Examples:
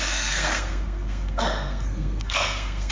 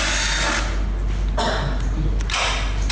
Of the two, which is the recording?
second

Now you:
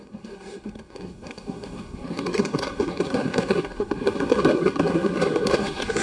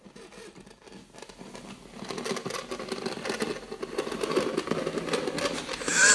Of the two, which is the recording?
second